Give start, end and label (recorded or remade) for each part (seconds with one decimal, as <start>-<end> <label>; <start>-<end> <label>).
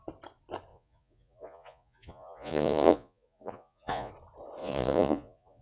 0.0-0.7 recorded; 0.7-4.1 remade; 4.1-4.6 recorded; 4.6-5.6 remade